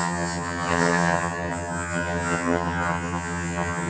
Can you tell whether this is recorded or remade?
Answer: remade